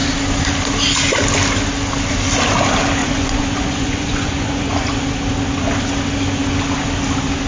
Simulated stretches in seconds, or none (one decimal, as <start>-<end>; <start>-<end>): 3.0-4.9